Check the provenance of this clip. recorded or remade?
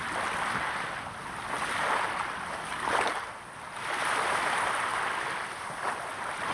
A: recorded